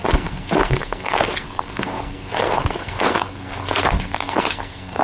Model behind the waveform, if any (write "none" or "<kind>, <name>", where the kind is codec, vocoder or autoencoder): codec, SNAC